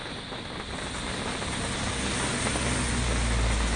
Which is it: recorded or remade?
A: recorded